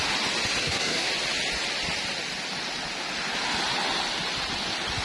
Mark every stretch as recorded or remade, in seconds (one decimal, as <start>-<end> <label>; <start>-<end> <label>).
0.0-0.6 recorded; 0.6-1.1 remade; 1.1-5.0 recorded

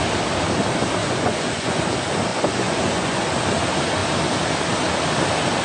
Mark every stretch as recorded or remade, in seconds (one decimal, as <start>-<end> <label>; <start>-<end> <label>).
0.0-1.0 recorded; 1.0-1.8 remade; 1.8-2.3 recorded; 2.3-3.2 remade; 3.2-5.6 recorded

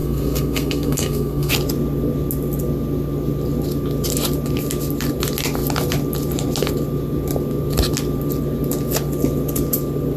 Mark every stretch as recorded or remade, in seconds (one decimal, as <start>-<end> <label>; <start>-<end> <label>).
0.0-1.5 remade; 1.5-10.2 recorded

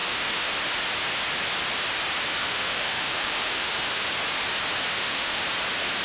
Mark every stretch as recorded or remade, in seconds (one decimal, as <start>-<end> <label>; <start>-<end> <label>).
0.0-0.5 remade; 0.5-2.4 recorded; 2.4-4.0 remade; 4.0-4.9 recorded; 4.9-5.4 remade; 5.4-6.0 recorded